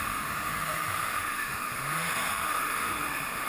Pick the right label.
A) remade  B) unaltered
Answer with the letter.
A